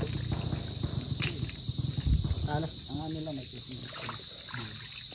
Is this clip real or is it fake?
real